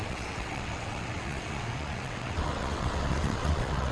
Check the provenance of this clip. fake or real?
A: fake